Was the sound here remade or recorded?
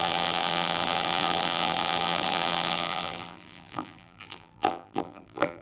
remade